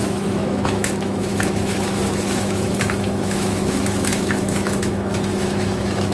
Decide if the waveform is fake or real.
fake